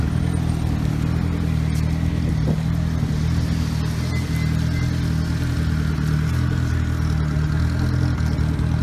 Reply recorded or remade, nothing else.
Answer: recorded